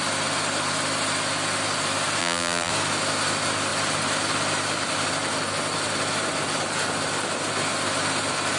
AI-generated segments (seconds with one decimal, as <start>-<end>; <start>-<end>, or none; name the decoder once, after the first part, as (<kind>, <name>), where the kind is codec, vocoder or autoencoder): 2.2-2.7 (vocoder, BigVGAN v2)